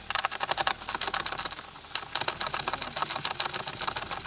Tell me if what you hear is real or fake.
real